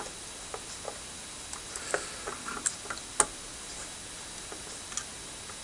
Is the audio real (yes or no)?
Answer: yes